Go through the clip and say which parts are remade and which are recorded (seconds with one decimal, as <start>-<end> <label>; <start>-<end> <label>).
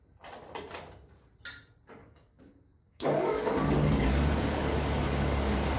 0.0-2.0 recorded; 2.0-5.8 remade